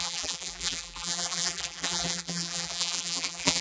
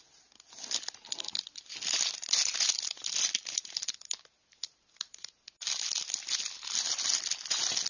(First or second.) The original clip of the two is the second